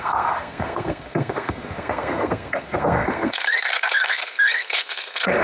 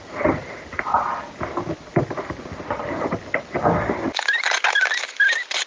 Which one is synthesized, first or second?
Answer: first